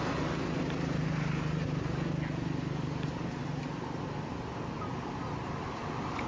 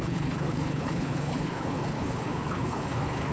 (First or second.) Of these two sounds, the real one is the first